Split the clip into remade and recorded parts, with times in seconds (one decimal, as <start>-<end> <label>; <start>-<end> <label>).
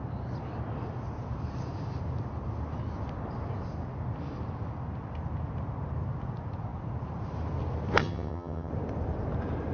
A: 0.0-8.0 recorded; 8.0-8.7 remade; 8.7-9.7 recorded